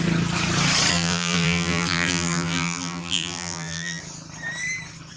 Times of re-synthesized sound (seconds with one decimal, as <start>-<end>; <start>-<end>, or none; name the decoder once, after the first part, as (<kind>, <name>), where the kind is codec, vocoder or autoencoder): 0.9-4.0 (vocoder, BigVGAN v2)